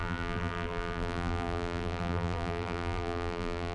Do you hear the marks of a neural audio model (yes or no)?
yes